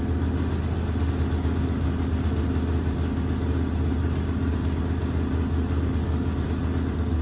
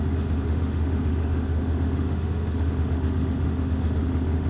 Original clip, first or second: first